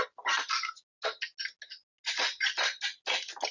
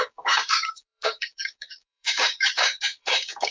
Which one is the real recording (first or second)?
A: first